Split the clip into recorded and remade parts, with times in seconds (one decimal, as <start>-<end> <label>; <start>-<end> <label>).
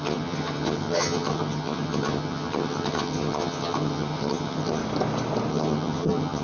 0.0-4.8 remade; 4.8-5.5 recorded; 5.5-6.4 remade